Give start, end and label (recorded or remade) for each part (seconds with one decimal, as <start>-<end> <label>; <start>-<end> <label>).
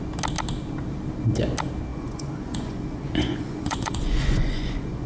0.0-1.9 recorded; 1.9-5.1 remade